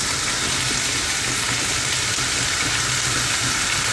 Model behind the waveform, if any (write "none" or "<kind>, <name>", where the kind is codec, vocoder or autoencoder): none